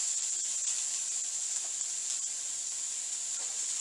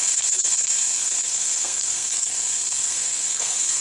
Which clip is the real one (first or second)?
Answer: first